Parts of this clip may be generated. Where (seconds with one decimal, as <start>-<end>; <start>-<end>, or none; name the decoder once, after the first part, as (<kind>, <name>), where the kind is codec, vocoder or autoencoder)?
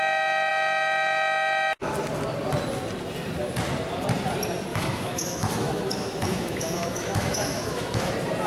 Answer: 4.7-8.1 (autoencoder, DAC-VAE)